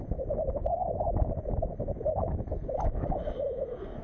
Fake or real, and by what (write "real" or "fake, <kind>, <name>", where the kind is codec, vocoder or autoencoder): fake, autoencoder, DAC-VAE